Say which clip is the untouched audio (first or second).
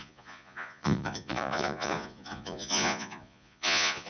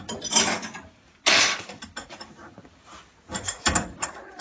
second